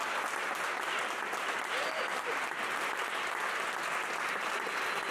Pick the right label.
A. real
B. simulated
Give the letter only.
A